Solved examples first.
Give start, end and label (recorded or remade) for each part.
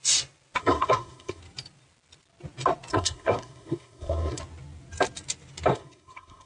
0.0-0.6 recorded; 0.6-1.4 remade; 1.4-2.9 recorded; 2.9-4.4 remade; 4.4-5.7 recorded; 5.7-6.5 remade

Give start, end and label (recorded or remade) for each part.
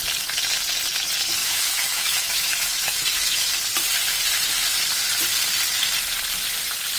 0.0-1.4 recorded; 1.4-3.5 remade; 3.5-7.0 recorded